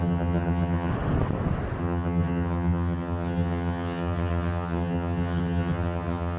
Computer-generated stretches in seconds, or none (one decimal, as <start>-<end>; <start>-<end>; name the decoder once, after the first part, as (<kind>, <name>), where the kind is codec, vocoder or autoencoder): 0.0-0.9 (vocoder, HiFi-GAN); 1.8-6.4

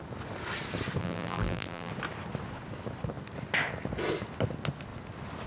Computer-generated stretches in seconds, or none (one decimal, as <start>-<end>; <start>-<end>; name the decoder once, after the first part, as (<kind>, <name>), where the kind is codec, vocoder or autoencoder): 1.0-1.9 (vocoder, BigVGAN v2)